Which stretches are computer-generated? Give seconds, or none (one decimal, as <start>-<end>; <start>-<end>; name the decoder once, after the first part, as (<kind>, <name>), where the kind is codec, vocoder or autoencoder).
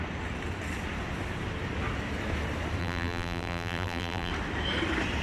2.8-4.3 (vocoder, BigVGAN v2)